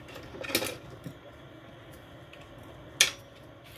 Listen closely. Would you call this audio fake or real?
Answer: real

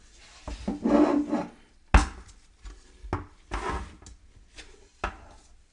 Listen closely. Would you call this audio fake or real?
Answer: real